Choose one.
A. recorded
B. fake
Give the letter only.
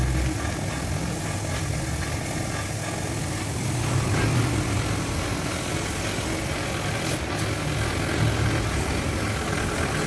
A